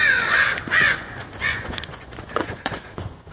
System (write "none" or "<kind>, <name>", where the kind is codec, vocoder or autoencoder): vocoder, Vocos